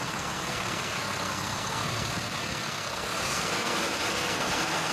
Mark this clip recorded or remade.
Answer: remade